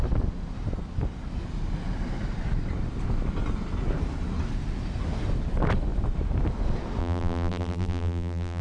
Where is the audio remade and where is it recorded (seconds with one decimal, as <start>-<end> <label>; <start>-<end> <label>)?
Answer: 0.0-7.0 recorded; 7.0-8.6 remade